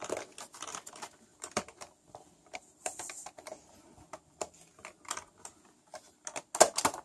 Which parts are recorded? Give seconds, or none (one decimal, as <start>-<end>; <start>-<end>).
0.0-1.3; 3.7-7.0